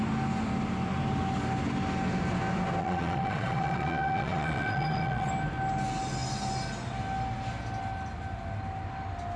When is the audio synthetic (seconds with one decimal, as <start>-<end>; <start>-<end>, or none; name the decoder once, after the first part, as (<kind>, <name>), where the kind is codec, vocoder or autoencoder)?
2.8-5.3 (vocoder, Vocos)